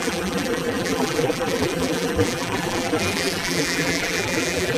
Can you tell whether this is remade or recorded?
remade